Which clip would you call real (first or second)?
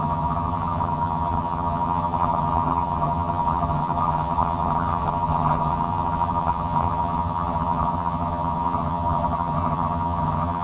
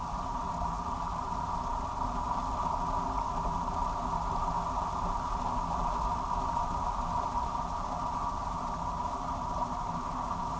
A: second